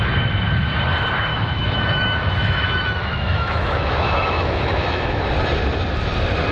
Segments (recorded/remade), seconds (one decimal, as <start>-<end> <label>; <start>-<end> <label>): 0.0-1.3 recorded; 1.3-5.2 remade; 5.2-6.5 recorded